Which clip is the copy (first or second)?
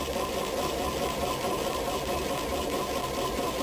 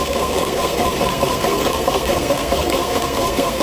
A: second